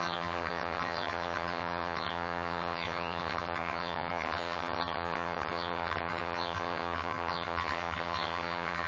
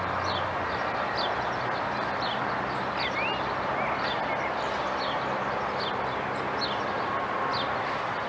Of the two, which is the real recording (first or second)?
second